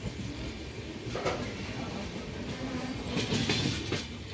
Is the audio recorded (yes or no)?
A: yes